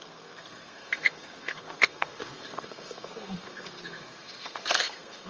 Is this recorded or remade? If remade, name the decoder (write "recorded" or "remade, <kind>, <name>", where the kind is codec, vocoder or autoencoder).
remade, codec, SNAC